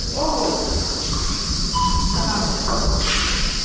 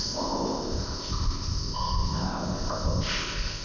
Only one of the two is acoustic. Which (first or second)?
first